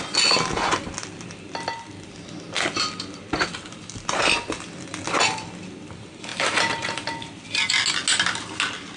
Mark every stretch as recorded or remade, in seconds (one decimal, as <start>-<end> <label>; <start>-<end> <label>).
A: 0.0-9.0 recorded